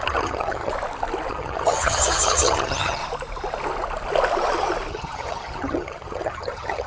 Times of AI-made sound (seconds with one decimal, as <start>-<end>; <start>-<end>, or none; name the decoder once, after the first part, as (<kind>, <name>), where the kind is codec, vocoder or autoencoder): 0.0-0.7 (vocoder, HiFi-GAN); 1.3-3.0; 4.9-6.9